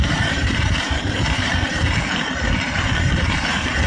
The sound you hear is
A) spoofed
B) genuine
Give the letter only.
A